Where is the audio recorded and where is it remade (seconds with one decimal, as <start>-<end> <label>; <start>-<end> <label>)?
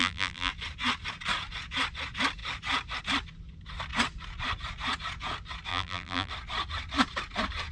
0.0-0.5 remade; 0.5-5.7 recorded; 5.7-6.3 remade; 6.3-7.7 recorded